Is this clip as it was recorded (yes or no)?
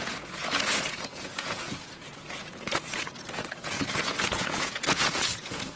no